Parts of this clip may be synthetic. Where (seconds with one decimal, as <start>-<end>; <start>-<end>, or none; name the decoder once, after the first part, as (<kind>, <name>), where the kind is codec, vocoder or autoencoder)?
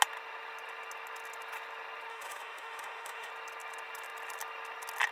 2.1-3.3 (autoencoder, DAC-VAE)